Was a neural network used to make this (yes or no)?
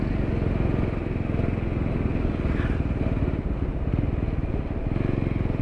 no